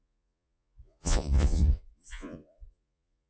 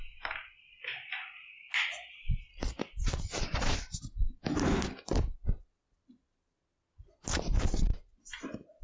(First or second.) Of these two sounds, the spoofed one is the first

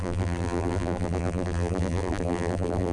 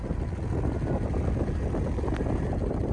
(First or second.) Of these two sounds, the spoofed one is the first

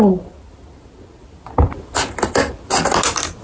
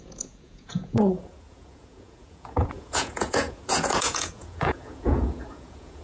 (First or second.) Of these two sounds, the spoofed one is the second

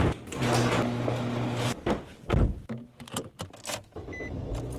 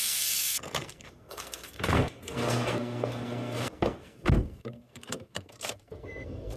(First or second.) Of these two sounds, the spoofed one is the second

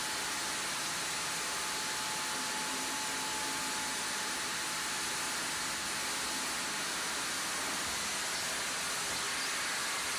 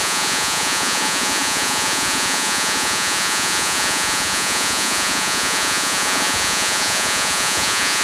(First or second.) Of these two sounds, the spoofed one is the second